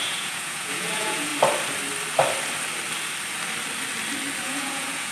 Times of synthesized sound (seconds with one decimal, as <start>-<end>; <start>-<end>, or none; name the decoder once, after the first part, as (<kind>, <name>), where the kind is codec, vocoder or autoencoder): 0.0-1.3 (vocoder, Vocos); 4.4-5.1